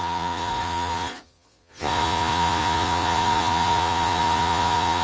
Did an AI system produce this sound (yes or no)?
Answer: yes